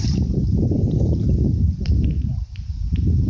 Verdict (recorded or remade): remade